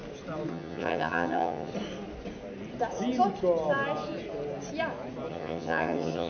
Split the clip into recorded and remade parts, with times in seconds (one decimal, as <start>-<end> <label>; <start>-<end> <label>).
0.0-0.5 recorded; 0.5-1.7 remade; 1.7-5.3 recorded; 5.3-6.3 remade